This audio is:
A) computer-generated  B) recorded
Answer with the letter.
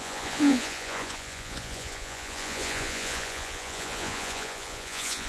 A